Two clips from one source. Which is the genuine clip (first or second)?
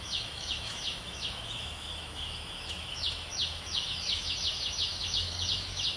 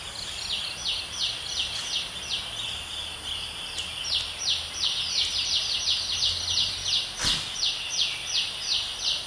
second